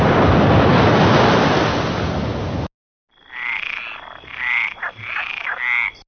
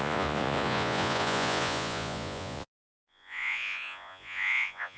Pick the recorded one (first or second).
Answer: first